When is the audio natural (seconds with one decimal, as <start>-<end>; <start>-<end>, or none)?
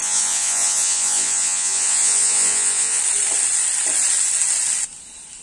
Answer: 3.0-5.4